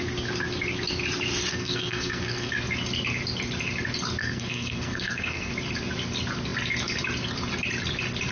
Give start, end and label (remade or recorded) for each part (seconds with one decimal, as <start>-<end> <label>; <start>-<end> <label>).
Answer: 0.0-1.5 recorded; 1.5-2.5 remade; 2.5-4.2 recorded; 4.2-5.5 remade; 5.5-8.3 recorded